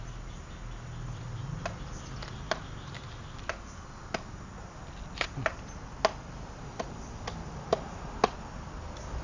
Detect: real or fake real